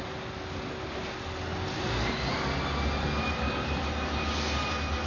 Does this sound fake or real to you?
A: real